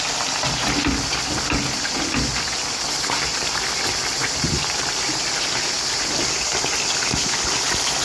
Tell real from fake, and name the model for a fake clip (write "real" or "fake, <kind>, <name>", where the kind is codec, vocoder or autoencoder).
real